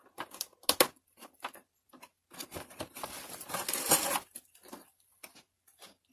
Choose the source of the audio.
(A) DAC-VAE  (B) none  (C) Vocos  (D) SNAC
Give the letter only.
B